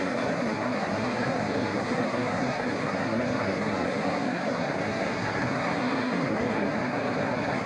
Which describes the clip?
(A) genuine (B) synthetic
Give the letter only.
B